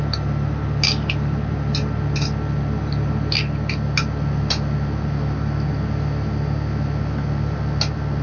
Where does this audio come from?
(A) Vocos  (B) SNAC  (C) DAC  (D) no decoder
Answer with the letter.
D